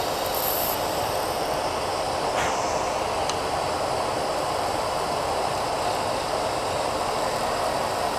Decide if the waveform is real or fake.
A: fake